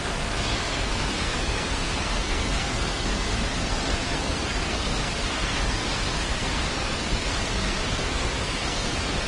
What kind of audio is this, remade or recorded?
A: remade